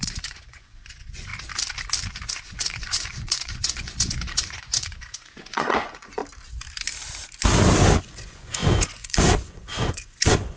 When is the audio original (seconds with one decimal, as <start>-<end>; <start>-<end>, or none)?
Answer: 1.3-2.3; 6.2-8.0